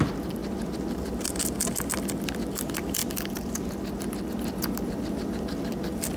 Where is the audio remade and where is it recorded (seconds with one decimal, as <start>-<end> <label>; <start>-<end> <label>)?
0.0-6.2 recorded